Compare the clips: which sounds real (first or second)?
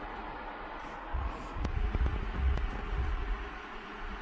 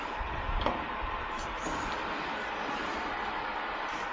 second